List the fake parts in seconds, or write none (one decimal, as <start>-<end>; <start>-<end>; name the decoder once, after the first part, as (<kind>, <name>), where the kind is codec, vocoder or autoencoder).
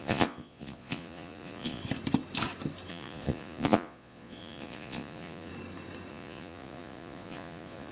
0.0-1.8 (vocoder, Vocos); 2.9-5.5; 6.1-7.9